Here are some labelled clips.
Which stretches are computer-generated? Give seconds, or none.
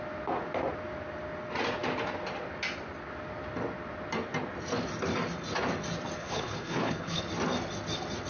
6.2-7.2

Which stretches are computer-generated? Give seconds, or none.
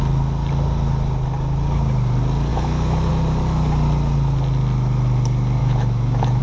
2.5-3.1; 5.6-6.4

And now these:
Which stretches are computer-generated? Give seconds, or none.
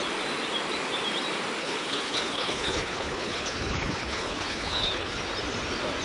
1.6-5.2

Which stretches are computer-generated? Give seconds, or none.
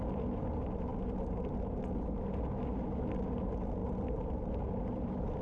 none